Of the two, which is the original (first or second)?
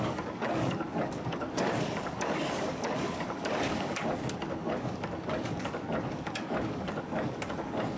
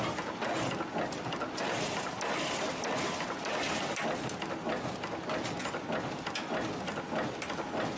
second